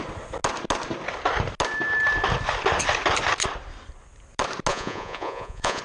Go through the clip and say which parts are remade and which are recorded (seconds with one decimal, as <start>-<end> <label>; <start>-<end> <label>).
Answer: 0.0-4.7 recorded; 4.7-5.8 remade